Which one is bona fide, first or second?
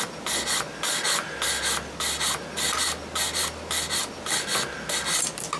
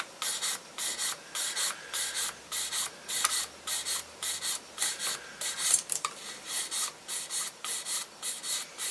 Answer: first